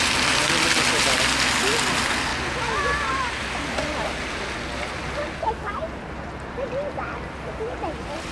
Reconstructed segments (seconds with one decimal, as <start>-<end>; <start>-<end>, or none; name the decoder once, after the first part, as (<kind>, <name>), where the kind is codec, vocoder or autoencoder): none